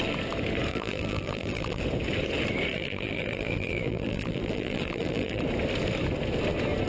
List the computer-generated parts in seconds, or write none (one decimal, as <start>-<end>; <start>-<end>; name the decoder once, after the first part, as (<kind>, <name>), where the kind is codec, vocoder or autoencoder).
0.7-1.8 (vocoder, BigVGAN v2); 2.7-5.4